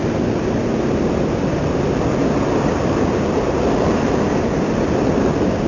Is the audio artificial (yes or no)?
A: no